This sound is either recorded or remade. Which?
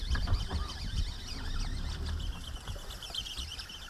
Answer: recorded